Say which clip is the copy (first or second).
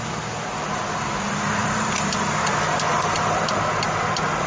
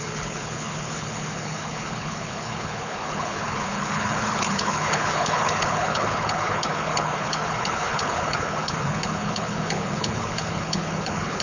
second